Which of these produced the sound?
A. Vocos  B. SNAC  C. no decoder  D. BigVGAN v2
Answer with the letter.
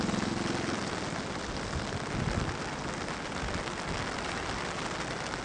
C